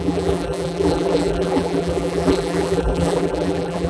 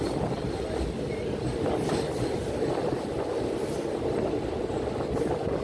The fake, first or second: first